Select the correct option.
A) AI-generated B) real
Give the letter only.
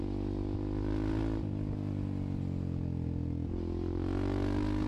B